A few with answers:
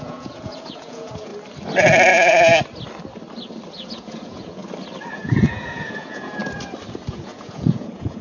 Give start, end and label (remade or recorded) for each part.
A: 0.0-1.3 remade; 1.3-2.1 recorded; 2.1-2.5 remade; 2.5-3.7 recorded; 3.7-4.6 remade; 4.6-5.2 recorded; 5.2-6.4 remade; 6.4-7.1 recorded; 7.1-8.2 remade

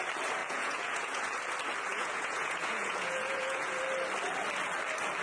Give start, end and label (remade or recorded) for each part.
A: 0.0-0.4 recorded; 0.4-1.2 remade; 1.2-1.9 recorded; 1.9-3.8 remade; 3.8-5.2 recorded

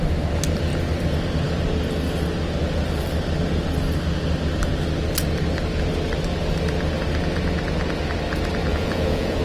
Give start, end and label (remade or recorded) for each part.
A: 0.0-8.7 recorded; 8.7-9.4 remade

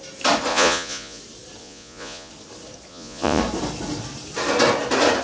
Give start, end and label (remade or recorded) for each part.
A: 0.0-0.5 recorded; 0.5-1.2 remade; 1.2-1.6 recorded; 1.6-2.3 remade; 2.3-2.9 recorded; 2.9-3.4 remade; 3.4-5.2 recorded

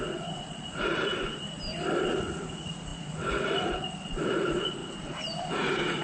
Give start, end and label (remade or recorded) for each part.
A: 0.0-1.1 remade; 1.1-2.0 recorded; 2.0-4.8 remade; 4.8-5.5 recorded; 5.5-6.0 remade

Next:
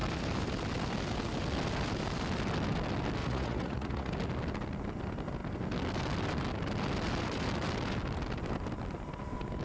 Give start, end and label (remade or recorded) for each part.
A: 0.0-3.2 recorded; 3.2-4.1 remade; 4.1-9.6 recorded

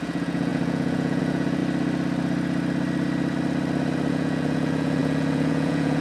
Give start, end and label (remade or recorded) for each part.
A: 0.0-1.6 remade; 1.6-4.1 recorded; 4.1-6.0 remade